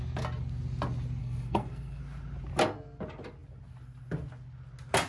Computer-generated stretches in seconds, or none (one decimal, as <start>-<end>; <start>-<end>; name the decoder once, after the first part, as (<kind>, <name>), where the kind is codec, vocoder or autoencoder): 1.2-2.0 (codec, SNAC)

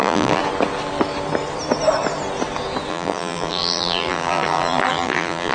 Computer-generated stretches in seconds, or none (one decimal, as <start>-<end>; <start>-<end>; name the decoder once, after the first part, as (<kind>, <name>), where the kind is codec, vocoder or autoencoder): 0.0-0.4 (vocoder, BigVGAN v2); 2.9-5.5

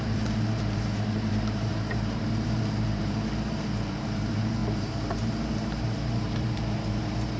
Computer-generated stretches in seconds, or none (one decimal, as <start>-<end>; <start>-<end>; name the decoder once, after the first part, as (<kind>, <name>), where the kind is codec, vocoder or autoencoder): 0.0-7.4 (vocoder, BigVGAN v2)

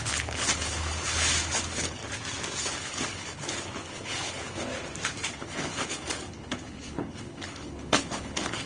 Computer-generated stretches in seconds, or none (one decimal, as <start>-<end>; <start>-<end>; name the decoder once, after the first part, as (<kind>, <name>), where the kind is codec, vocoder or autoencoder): 0.0-2.0 (codec, HILCodec); 2.6-4.7; 5.3-8.7

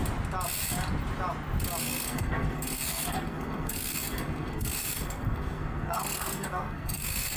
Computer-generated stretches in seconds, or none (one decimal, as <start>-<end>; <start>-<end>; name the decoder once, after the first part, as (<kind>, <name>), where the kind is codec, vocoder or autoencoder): 1.8-7.4 (codec, SNAC)

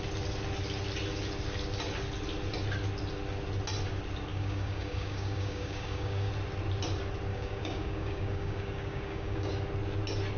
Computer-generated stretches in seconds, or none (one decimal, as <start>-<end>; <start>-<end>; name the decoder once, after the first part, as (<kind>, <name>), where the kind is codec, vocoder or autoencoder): 4.3-6.3 (codec, DAC); 7.3-9.5